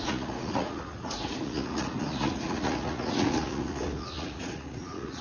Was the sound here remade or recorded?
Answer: remade